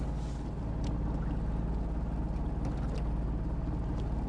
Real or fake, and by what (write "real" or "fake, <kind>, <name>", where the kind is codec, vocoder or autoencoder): real